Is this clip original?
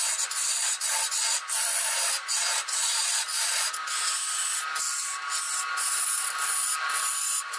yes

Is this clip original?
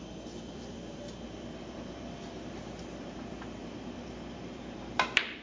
no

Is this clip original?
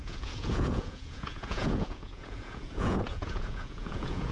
no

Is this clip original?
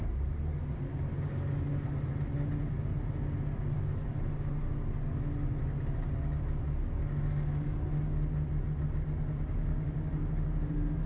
yes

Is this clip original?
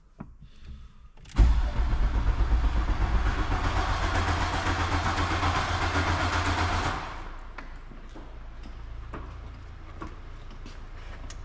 yes